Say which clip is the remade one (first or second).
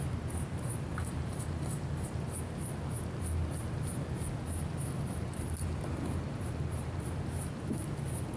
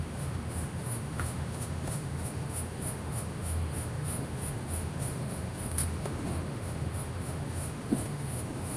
second